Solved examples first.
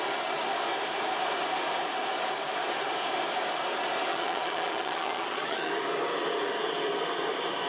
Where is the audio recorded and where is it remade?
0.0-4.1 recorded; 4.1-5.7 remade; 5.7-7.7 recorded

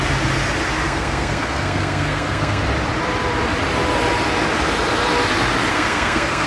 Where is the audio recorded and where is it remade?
0.0-0.8 recorded; 0.8-2.6 remade; 2.6-5.7 recorded; 5.7-6.5 remade

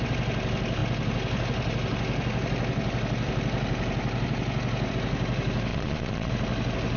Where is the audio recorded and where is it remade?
0.0-5.7 recorded; 5.7-6.3 remade; 6.3-7.0 recorded

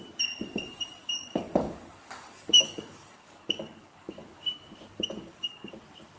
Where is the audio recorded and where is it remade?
0.0-1.0 recorded; 1.0-4.7 remade; 4.7-5.2 recorded; 5.2-5.8 remade; 5.8-6.2 recorded

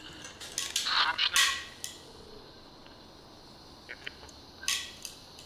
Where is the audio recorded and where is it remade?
0.0-5.5 recorded

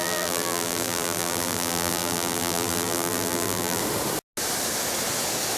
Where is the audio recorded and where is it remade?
0.0-3.8 remade; 3.8-5.6 recorded

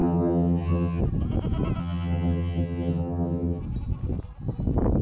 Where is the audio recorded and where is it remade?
0.0-1.0 remade; 1.0-1.8 recorded; 1.8-3.6 remade; 3.6-5.0 recorded